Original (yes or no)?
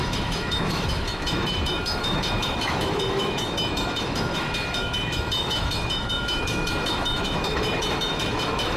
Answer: no